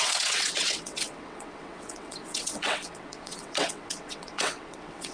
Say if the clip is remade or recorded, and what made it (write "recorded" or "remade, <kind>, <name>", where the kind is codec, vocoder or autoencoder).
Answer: remade, vocoder, WaveNeXt